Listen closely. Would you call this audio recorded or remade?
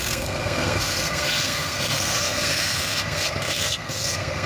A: remade